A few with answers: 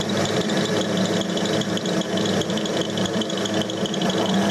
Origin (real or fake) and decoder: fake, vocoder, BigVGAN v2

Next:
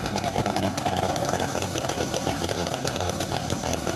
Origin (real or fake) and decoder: fake, codec, SNAC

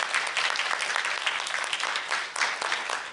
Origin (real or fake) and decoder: real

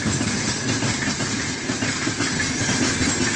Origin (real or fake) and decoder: real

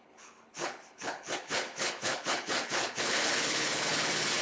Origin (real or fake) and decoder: fake, codec, HILCodec